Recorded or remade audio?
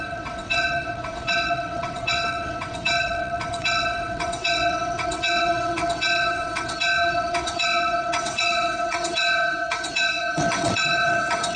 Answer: remade